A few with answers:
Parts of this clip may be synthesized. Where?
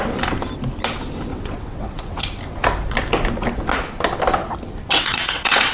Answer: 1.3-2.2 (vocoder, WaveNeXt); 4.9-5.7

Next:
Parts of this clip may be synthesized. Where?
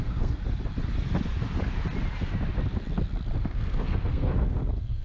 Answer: 0.0-0.4 (codec, SNAC); 3.4-5.0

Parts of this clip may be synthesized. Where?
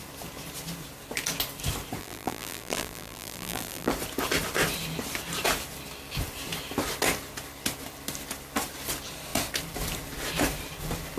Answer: 2.0-3.9 (vocoder, BigVGAN v2)